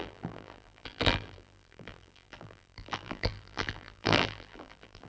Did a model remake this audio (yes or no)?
yes